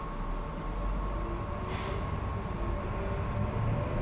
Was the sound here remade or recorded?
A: recorded